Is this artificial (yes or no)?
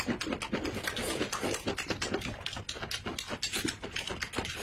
no